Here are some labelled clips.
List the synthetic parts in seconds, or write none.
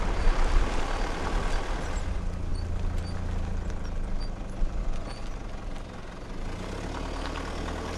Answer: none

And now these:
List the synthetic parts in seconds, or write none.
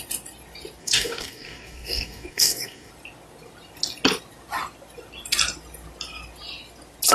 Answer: 0.8-2.9 (codec, DAC)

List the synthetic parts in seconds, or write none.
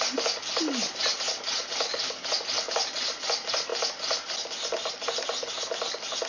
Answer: none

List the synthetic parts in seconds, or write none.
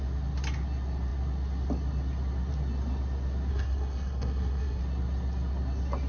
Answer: 3.5-4.8 (codec, SNAC)